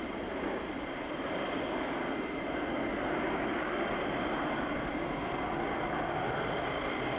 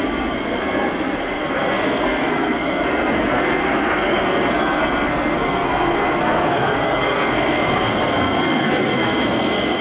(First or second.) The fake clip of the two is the second